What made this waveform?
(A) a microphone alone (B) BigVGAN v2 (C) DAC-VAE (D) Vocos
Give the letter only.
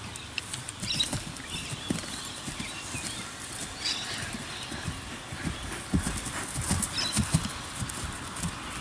A